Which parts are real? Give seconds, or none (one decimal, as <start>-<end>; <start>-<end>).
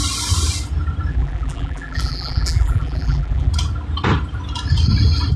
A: 0.0-1.1; 3.5-5.4